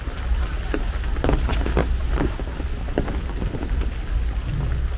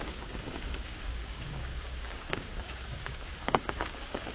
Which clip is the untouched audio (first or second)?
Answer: first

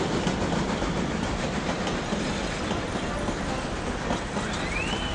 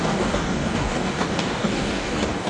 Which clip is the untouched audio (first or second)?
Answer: first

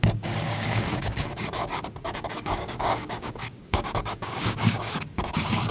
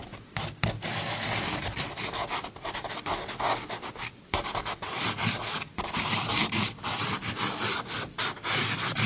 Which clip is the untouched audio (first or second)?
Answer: second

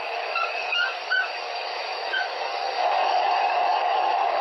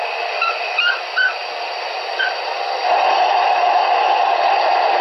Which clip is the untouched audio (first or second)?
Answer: second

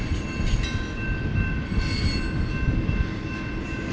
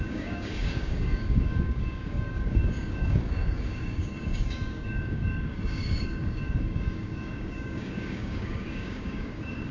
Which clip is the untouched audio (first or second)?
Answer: first